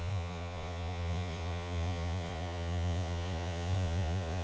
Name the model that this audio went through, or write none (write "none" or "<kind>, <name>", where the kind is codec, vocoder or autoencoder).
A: vocoder, Vocos